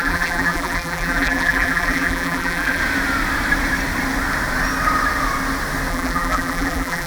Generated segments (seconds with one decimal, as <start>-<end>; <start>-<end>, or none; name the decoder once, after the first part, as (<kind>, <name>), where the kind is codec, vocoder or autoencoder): 0.0-2.8 (vocoder, BigVGAN v2); 5.9-7.1